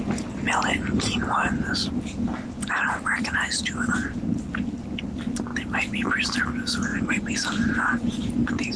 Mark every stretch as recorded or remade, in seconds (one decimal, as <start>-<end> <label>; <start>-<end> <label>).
0.0-6.9 recorded; 6.9-8.2 remade; 8.2-8.8 recorded